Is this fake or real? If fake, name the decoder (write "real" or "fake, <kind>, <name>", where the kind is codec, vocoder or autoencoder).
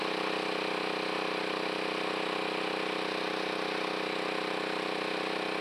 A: real